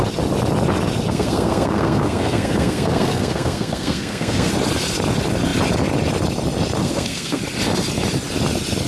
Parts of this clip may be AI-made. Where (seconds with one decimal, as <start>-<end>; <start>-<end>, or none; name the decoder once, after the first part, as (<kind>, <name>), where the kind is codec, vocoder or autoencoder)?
1.1-4.5 (codec, SNAC); 6.8-7.4